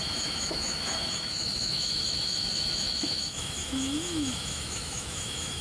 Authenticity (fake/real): fake